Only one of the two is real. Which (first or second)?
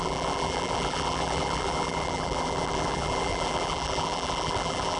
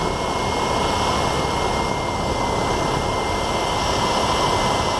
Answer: second